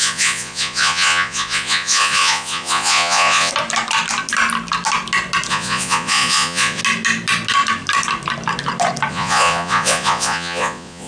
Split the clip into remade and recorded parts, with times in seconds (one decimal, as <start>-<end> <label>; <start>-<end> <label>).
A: 0.0-3.5 remade; 3.5-5.5 recorded; 5.5-6.8 remade; 6.8-9.1 recorded; 9.1-11.1 remade